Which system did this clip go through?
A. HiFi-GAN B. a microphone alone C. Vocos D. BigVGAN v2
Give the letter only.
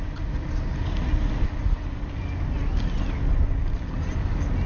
B